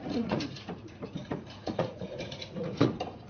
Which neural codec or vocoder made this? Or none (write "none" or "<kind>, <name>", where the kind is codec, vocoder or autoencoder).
vocoder, Vocos